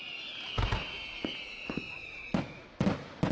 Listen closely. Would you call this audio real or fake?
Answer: real